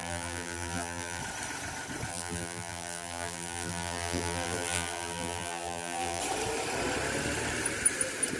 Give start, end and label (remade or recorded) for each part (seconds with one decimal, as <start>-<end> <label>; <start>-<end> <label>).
0.0-1.2 remade; 1.2-2.1 recorded; 2.1-6.2 remade; 6.2-8.4 recorded